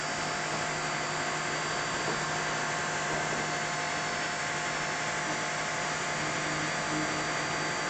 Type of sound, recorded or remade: recorded